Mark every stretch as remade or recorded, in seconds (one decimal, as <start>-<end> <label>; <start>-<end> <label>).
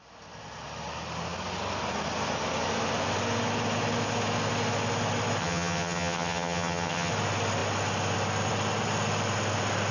0.0-5.4 recorded; 5.4-7.1 remade; 7.1-9.9 recorded